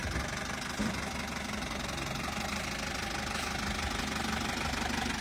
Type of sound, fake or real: real